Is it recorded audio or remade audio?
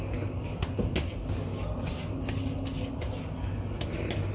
recorded